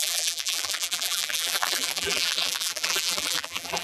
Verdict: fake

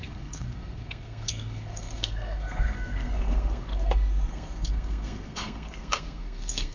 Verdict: fake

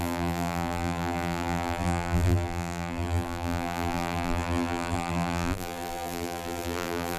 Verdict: fake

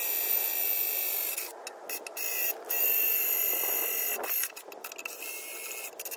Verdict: real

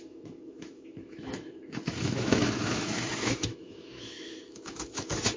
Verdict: fake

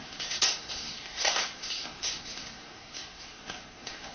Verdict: fake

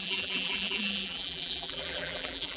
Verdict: fake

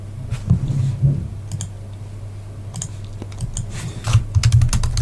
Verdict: real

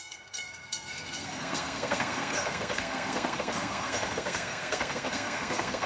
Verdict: fake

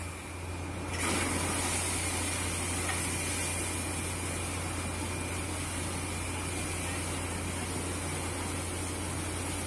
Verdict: real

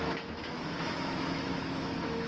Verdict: fake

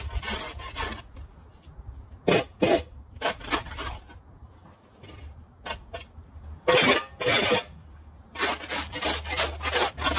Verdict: real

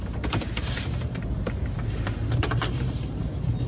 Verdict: fake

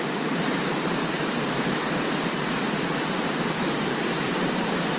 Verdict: fake